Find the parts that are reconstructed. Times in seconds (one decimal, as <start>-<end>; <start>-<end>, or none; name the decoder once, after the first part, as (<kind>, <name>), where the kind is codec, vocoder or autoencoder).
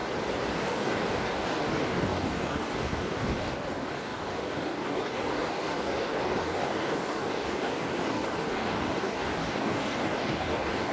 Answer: 0.6-10.9 (codec, DAC)